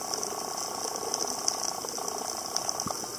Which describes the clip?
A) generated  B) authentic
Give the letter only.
B